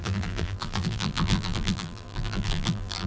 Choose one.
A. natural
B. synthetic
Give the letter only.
B